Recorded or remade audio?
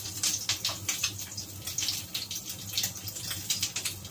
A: recorded